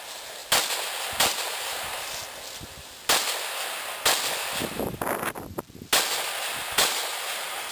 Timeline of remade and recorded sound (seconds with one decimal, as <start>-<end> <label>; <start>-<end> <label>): 0.0-0.4 remade; 0.4-1.5 recorded; 1.5-2.2 remade; 2.2-6.6 recorded; 6.6-7.7 remade